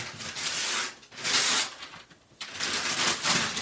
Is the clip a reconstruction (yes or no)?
no